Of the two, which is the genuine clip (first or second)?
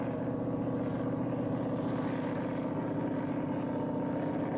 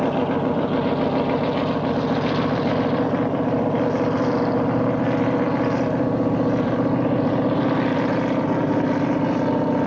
first